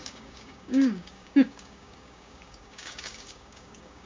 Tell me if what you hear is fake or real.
fake